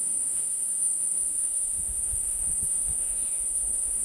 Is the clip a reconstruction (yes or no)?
yes